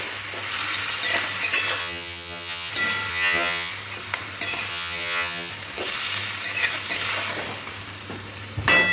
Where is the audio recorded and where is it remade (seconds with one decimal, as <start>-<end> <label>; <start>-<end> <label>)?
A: 0.0-1.8 recorded; 1.8-2.7 remade; 2.7-3.1 recorded; 3.1-3.7 remade; 3.7-4.7 recorded; 4.7-5.5 remade; 5.5-8.9 recorded